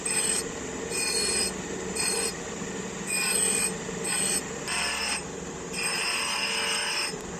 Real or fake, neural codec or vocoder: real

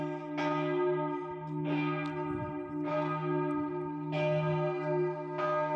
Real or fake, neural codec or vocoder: real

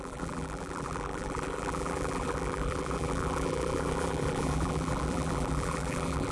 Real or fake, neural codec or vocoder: fake, vocoder, BigVGAN v2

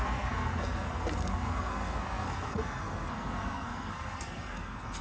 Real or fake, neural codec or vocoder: fake, codec, SNAC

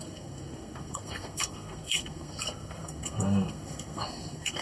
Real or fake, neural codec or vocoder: fake, codec, SNAC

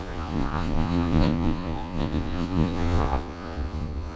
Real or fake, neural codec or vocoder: fake, vocoder, Vocos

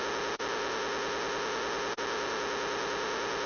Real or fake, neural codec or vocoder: real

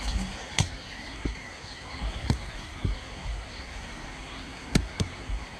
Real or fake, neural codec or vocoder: fake, codec, SNAC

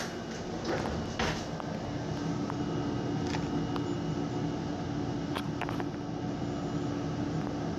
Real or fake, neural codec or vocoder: real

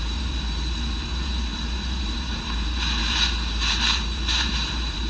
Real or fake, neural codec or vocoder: fake, vocoder, BigVGAN v2